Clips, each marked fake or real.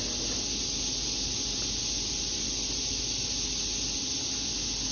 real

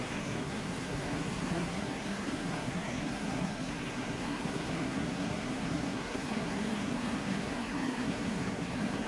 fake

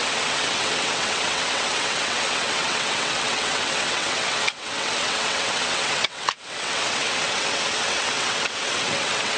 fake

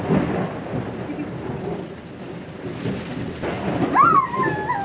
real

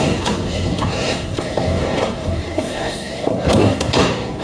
fake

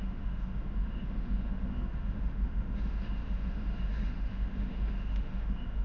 fake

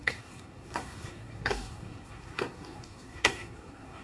fake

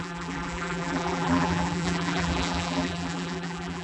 fake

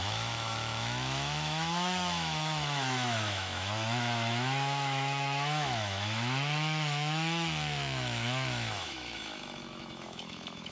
fake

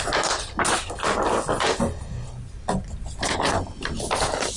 real